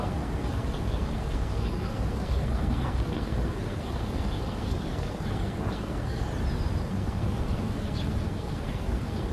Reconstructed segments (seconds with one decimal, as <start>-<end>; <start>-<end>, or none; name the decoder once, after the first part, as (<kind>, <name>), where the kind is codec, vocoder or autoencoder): 0.0-6.3 (codec, SNAC); 6.8-9.3